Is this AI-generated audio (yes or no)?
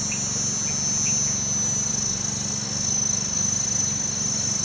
no